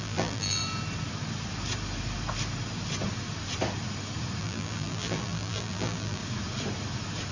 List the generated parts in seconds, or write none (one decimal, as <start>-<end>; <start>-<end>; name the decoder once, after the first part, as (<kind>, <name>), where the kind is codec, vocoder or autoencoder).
0.0-0.6 (vocoder, BigVGAN v2); 4.4-6.2